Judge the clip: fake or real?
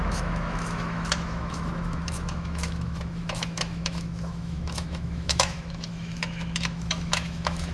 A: fake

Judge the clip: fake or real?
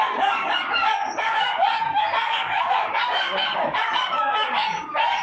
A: fake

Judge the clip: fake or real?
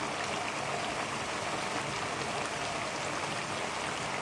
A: real